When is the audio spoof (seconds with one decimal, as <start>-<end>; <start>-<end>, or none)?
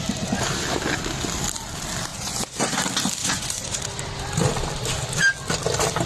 2.1-2.8; 3.2-3.8